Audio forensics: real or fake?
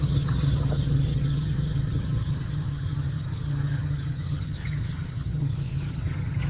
fake